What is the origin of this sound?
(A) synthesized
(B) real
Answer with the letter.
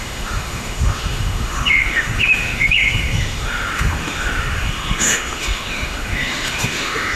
A